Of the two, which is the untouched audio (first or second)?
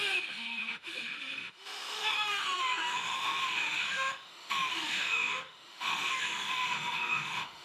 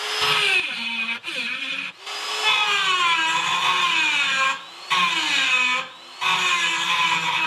second